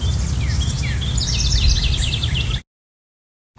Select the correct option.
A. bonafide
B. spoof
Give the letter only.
A